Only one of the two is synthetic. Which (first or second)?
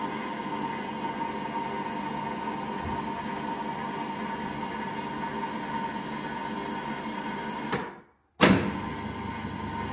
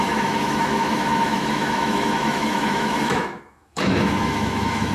second